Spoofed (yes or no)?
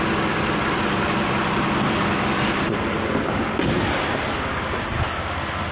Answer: no